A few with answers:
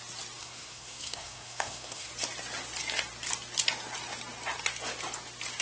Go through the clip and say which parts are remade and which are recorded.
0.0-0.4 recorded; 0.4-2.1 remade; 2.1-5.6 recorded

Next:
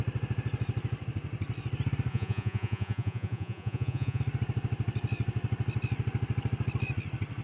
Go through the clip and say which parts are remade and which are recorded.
0.0-2.1 recorded; 2.1-4.2 remade; 4.2-7.4 recorded

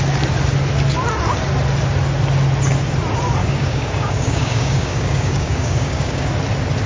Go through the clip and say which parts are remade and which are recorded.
0.0-3.4 recorded; 3.4-6.3 remade; 6.3-6.9 recorded